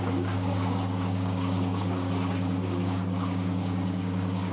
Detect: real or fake fake